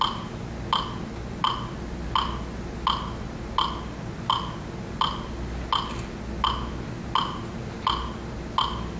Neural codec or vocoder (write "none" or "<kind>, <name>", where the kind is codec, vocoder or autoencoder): none